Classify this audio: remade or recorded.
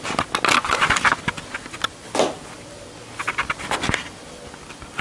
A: recorded